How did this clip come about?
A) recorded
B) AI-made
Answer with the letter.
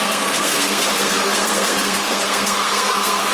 B